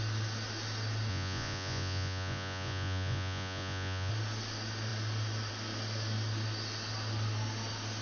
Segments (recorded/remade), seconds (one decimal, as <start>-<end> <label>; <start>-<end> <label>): 0.0-1.1 recorded; 1.1-4.1 remade; 4.1-8.0 recorded